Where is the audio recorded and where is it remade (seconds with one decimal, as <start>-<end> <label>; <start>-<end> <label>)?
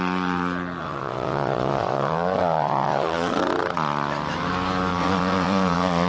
0.0-0.8 recorded; 0.8-3.4 remade; 3.4-4.9 recorded; 4.9-6.1 remade